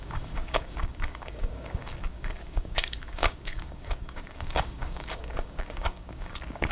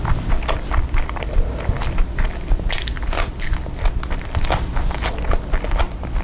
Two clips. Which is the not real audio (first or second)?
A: first